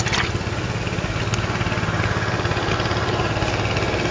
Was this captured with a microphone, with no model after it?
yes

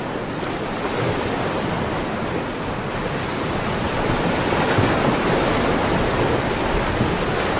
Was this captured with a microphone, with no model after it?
yes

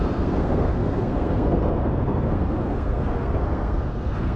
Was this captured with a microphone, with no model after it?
no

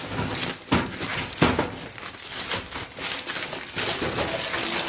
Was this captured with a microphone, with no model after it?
yes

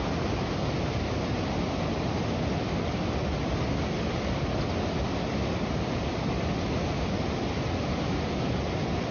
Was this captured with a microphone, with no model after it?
yes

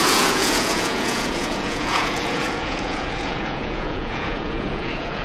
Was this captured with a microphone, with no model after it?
no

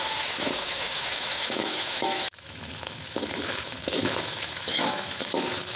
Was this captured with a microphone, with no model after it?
no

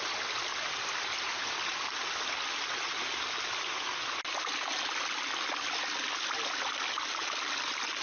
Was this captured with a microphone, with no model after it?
yes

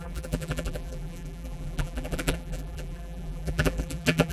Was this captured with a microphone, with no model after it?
no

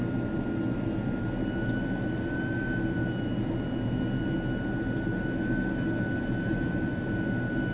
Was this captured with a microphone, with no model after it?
yes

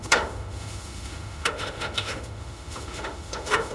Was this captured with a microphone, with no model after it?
no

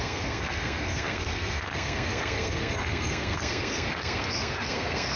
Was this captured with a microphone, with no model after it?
no